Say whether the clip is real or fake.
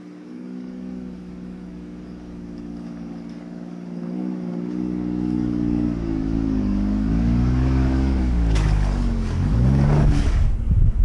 fake